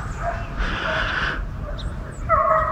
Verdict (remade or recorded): recorded